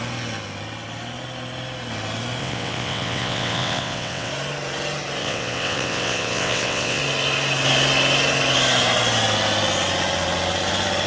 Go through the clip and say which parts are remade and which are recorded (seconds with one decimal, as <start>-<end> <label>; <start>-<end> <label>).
0.0-2.4 recorded; 2.4-4.3 remade; 4.3-5.2 recorded; 5.2-7.0 remade; 7.0-11.1 recorded